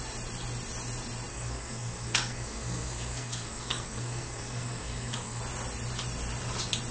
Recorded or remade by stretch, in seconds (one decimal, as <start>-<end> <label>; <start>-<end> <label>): 0.0-1.3 recorded; 1.3-5.4 remade; 5.4-6.9 recorded